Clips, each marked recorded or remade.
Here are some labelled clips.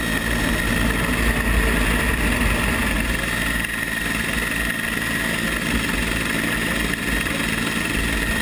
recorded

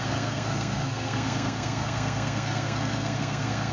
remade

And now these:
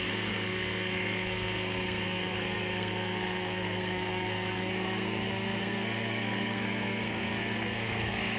remade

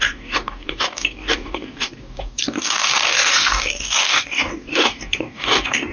remade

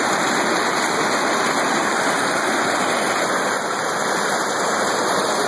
recorded